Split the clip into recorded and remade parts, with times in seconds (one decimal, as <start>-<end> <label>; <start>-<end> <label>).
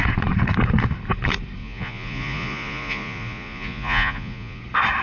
0.0-1.6 recorded; 1.6-4.6 remade; 4.6-5.0 recorded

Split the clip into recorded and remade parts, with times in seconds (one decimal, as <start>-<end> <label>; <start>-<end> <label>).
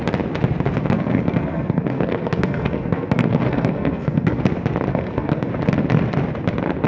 0.0-0.8 recorded; 0.8-4.4 remade; 4.4-4.9 recorded; 4.9-5.5 remade; 5.5-6.9 recorded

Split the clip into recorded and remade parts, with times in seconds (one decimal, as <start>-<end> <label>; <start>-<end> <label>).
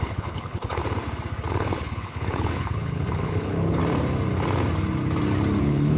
0.0-0.8 remade; 0.8-1.5 recorded; 1.5-3.8 remade; 3.8-5.6 recorded; 5.6-6.0 remade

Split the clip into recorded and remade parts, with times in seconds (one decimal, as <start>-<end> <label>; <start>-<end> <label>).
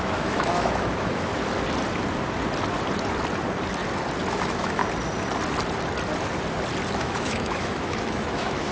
0.0-1.3 remade; 1.3-4.3 recorded; 4.3-4.8 remade; 4.8-7.0 recorded; 7.0-8.7 remade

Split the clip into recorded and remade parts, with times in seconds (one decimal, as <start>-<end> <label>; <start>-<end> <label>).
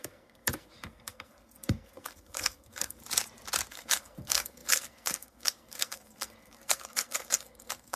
0.0-3.0 remade; 3.0-3.7 recorded; 3.7-8.0 remade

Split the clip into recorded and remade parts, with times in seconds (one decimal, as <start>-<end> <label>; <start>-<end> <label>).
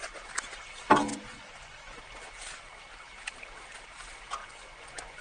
0.0-1.1 recorded; 1.1-2.0 remade; 2.0-4.4 recorded; 4.4-5.2 remade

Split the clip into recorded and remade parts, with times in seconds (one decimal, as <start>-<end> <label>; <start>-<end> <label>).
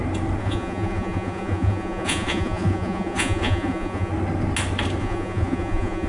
0.0-0.4 recorded; 0.4-4.1 remade; 4.1-5.0 recorded; 5.0-6.1 remade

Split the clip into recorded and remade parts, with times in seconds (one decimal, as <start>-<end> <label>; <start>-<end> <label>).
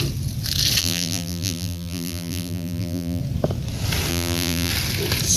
0.0-0.8 recorded; 0.8-3.2 remade; 3.2-4.1 recorded; 4.1-4.7 remade; 4.7-5.4 recorded